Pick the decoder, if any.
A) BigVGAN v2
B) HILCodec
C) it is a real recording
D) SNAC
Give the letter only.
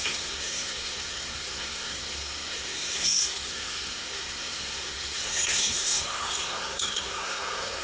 D